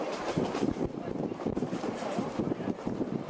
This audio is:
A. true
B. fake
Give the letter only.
B